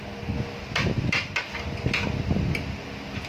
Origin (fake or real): real